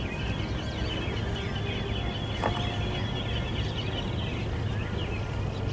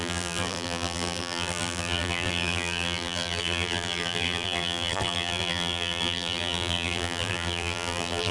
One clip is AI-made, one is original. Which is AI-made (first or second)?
second